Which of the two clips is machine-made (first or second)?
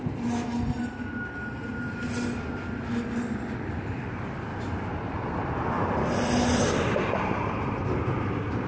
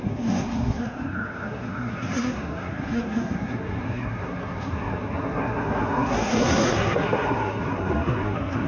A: second